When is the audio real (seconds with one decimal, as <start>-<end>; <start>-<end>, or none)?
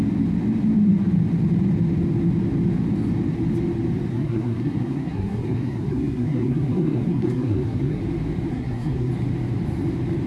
0.0-4.1; 8.0-8.5; 9.1-10.3